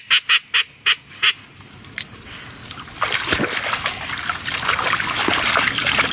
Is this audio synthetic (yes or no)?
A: no